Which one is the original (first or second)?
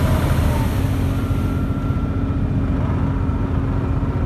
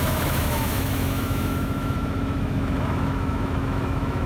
first